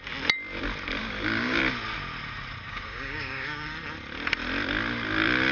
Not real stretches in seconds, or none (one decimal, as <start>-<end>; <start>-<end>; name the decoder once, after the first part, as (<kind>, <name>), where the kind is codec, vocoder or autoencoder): 1.0-1.6 (codec, DAC); 2.7-3.7